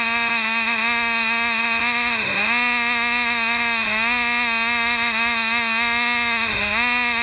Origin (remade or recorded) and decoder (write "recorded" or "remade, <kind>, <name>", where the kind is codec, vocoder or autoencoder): remade, autoencoder, DAC-VAE